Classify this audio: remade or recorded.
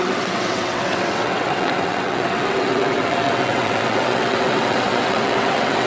remade